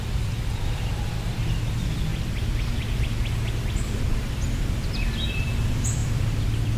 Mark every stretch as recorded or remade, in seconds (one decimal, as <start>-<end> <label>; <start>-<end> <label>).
0.0-2.1 remade; 2.1-3.9 recorded; 3.9-6.8 remade